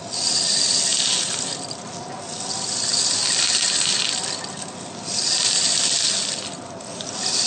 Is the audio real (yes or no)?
yes